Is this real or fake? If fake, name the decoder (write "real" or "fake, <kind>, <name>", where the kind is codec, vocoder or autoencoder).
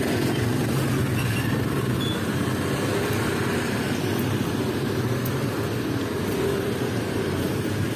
real